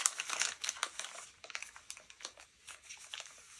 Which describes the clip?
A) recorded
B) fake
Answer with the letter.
B